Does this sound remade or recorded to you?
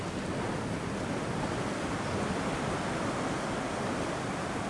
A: recorded